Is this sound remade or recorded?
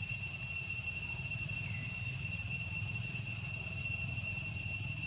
remade